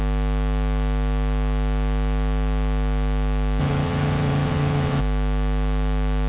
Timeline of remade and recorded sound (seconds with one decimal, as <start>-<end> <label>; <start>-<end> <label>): 0.0-3.6 recorded; 3.6-5.0 remade; 5.0-6.3 recorded